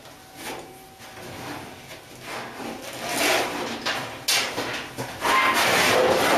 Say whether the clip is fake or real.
real